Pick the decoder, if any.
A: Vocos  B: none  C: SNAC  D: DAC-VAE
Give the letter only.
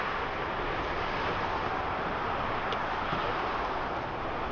B